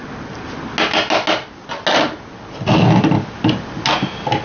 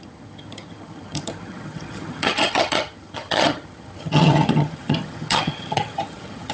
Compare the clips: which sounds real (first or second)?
first